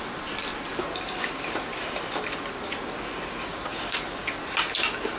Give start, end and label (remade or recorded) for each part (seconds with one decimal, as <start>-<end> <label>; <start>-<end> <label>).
0.0-3.5 recorded; 3.5-4.2 remade; 4.2-5.2 recorded